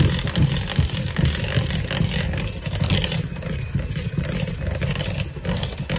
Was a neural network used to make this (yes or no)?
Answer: no